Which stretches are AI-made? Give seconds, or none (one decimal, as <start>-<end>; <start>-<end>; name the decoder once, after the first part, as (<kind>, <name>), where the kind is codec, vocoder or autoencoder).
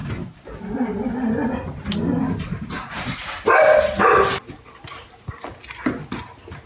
none